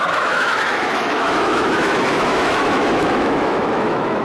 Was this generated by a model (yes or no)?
yes